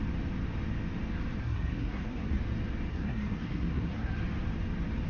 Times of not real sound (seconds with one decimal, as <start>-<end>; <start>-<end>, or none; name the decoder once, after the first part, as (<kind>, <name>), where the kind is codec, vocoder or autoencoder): 1.4-2.4 (codec, SNAC); 2.9-4.1